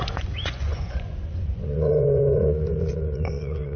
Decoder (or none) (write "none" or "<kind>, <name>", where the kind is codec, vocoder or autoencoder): vocoder, Vocos